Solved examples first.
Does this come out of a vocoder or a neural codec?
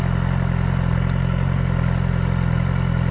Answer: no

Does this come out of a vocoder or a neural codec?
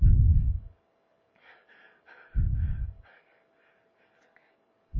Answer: yes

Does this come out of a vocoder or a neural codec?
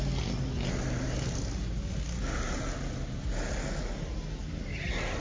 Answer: no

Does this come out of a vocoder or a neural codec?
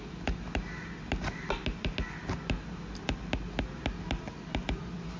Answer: no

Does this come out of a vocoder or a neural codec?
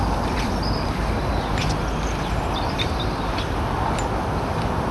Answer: no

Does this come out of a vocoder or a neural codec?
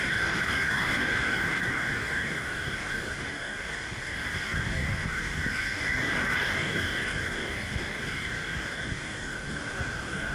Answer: yes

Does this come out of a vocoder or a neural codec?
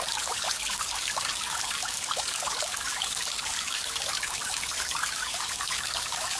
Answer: yes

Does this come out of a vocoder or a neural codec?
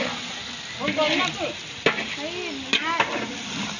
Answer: no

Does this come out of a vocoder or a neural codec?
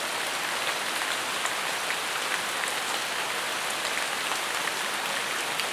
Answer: no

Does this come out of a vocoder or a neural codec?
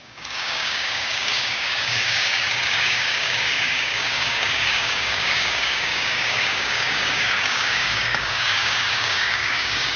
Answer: yes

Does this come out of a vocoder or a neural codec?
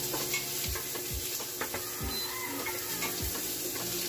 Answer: no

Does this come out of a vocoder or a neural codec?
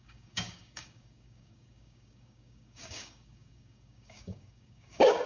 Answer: yes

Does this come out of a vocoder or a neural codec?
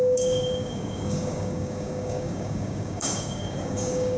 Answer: yes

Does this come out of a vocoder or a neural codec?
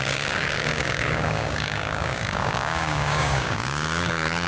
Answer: yes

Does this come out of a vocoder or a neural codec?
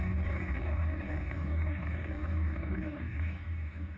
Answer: yes